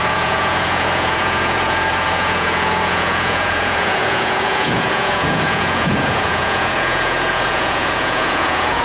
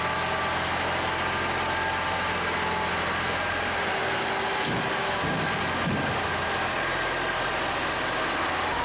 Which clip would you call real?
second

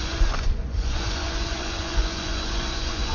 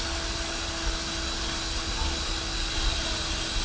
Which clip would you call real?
second